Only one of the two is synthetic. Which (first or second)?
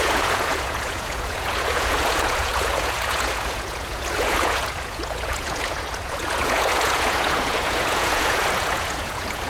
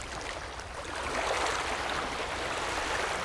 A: first